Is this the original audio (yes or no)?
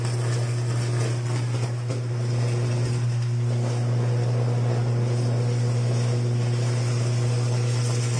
yes